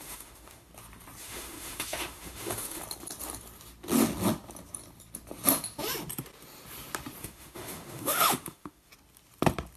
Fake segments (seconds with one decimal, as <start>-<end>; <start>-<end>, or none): 0.0-0.7; 1.2-2.8; 7.2-8.9